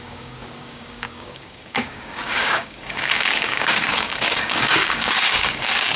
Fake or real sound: fake